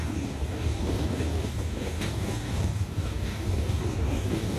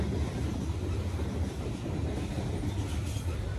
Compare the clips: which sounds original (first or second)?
second